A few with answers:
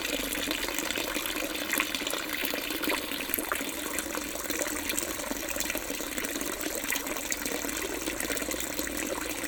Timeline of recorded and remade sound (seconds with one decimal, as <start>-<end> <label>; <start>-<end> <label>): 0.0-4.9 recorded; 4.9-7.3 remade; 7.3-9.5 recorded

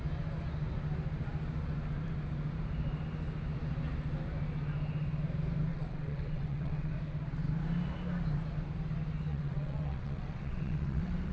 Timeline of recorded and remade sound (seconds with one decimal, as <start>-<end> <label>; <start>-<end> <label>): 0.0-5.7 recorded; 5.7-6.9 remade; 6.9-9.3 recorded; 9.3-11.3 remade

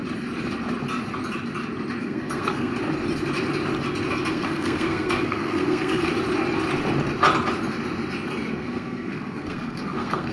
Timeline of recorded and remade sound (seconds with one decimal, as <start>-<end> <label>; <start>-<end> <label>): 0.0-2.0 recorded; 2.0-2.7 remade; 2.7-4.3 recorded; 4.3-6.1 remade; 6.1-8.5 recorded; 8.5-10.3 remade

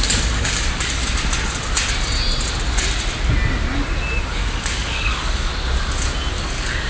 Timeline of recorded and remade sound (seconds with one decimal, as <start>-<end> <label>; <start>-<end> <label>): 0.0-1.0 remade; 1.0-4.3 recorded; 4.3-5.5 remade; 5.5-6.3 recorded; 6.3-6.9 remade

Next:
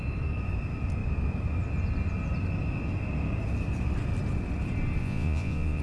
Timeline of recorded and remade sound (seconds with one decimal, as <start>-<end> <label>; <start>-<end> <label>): 0.0-5.0 recorded; 5.0-5.8 remade